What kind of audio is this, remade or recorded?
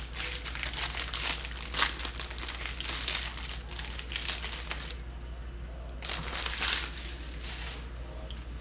recorded